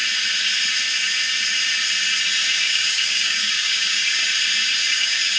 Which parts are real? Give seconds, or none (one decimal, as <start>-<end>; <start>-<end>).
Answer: 0.0-2.5; 4.2-4.8